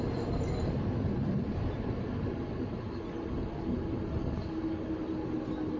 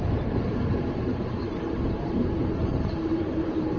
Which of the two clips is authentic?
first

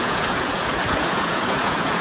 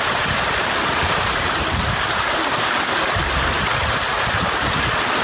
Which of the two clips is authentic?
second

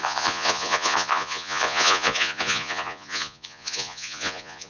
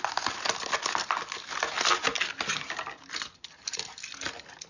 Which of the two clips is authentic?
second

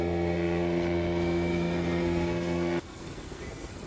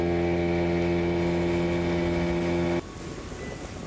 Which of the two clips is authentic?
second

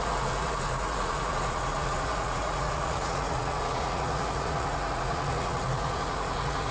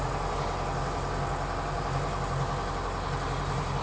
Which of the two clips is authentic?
second